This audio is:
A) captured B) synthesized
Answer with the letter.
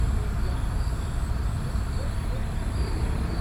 B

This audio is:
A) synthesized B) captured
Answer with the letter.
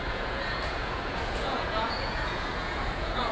A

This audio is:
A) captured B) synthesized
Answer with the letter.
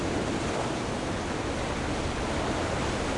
A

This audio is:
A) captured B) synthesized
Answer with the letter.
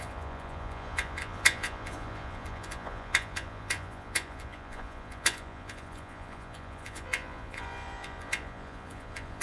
B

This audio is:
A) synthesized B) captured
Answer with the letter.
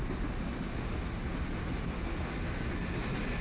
B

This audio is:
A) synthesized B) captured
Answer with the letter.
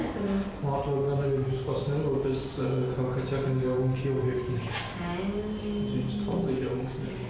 B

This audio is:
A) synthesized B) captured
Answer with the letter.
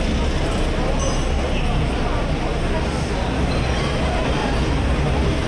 B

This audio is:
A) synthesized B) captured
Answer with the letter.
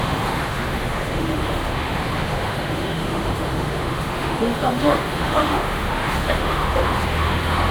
A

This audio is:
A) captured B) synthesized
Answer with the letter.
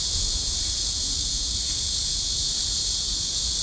B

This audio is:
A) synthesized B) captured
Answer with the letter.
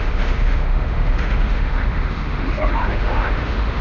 A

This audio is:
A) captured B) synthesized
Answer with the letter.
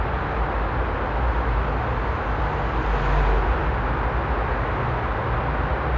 A